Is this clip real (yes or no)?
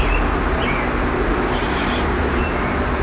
yes